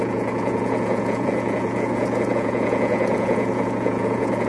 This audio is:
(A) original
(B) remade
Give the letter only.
B